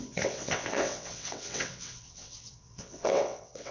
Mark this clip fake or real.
fake